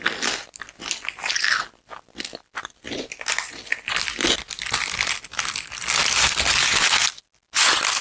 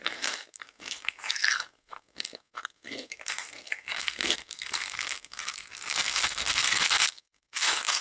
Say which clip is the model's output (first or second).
second